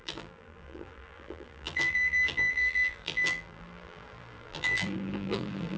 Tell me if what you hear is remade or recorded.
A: remade